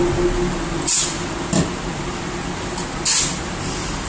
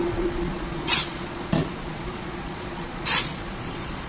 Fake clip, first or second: second